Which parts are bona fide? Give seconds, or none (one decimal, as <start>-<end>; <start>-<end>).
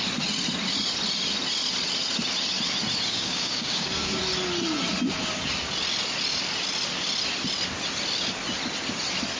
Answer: 0.0-3.1; 4.2-9.4